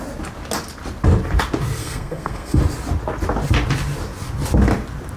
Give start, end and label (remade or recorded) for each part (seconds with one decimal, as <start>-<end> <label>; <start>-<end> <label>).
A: 0.0-1.8 recorded; 1.8-2.6 remade; 2.6-5.2 recorded